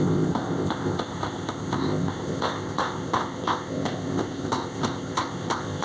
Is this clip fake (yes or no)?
yes